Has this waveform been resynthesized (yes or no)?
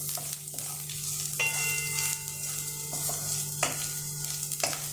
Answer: no